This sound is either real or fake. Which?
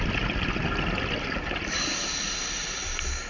real